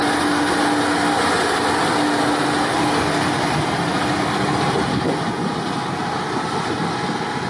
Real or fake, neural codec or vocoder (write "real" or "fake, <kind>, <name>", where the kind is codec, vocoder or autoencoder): real